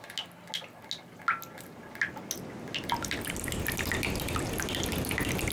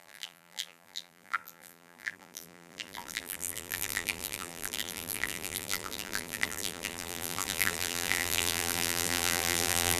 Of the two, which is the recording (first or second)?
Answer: first